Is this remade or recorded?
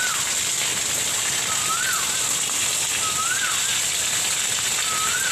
recorded